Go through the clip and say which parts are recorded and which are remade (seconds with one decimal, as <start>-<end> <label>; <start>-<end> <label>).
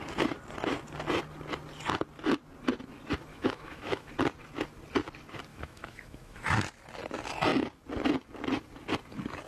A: 0.0-3.3 recorded; 3.3-4.1 remade; 4.1-5.5 recorded; 5.5-6.4 remade; 6.4-9.5 recorded